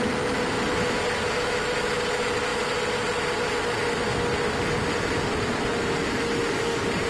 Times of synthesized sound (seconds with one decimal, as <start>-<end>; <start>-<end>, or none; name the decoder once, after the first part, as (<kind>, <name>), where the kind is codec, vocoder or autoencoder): none